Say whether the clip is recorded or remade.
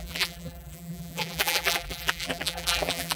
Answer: remade